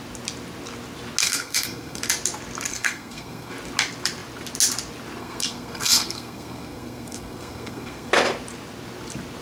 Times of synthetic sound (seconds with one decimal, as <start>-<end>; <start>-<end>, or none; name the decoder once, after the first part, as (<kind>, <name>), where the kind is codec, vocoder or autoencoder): 1.2-2.0 (codec, SNAC); 2.7-3.5; 5.2-8.1